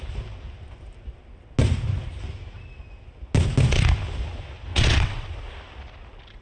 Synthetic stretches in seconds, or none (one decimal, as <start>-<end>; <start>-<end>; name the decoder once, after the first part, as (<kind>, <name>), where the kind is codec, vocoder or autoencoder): 4.7-5.3 (vocoder, WaveNeXt)